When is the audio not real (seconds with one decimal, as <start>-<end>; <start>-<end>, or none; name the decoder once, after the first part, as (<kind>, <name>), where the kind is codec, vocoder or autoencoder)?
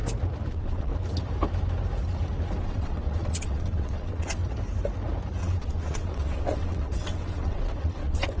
0.5-0.9 (vocoder, WaveNeXt); 2.6-4.4; 5.4-8.4